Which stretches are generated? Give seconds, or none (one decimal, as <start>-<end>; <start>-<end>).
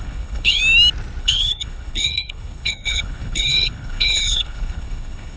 0.0-0.6; 1.2-5.4